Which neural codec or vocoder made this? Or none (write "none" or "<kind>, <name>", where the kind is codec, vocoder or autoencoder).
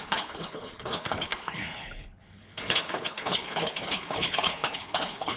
codec, HILCodec